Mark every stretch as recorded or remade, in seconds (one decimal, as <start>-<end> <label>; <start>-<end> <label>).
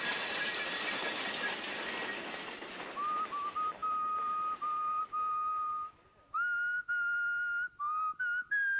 0.0-8.8 recorded